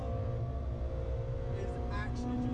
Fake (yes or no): no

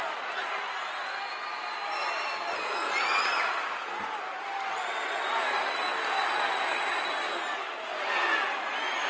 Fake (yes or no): no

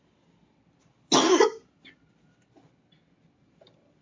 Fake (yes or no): no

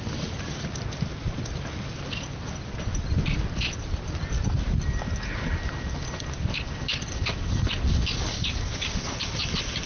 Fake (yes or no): no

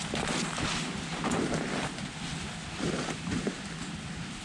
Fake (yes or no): no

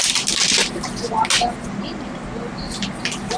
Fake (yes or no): no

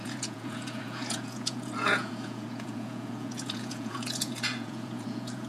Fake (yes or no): yes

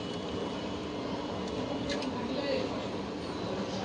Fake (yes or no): no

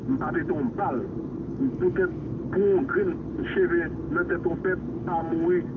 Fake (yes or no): no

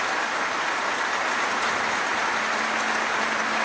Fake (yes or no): no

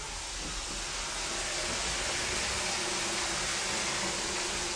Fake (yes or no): no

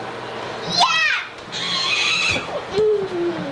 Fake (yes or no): no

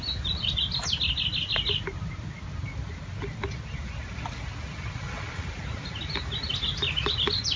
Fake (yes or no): no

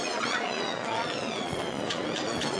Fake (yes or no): yes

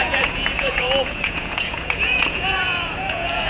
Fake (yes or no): yes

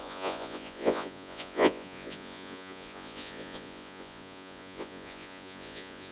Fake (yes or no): yes